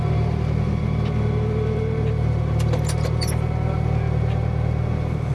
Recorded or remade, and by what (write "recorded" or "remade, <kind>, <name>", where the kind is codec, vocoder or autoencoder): remade, vocoder, BigVGAN v2